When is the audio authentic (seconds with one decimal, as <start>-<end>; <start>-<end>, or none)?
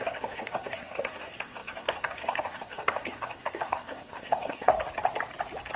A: 4.7-5.8